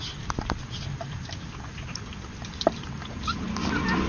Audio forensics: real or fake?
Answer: real